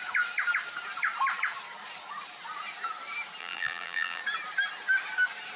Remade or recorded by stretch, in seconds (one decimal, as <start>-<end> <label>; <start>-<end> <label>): 0.0-3.4 recorded; 3.4-4.2 remade; 4.2-5.6 recorded